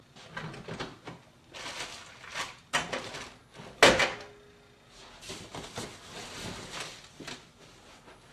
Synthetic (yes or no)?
no